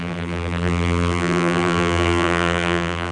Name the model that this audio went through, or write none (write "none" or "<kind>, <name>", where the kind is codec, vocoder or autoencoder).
vocoder, BigVGAN v2